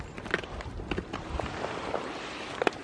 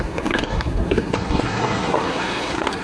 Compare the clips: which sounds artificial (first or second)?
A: second